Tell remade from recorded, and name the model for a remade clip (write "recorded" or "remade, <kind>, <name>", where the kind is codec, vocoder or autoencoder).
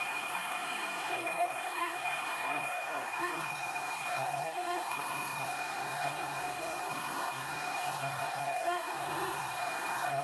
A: remade, codec, SNAC